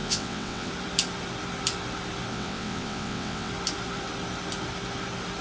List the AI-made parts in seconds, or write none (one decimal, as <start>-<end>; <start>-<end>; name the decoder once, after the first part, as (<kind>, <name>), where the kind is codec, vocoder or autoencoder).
0.0-0.7 (vocoder, WaveNeXt); 2.3-3.5